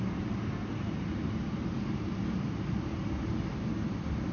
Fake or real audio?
fake